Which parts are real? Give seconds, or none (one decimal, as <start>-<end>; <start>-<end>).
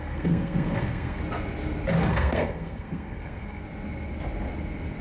1.2-2.1; 3.6-5.0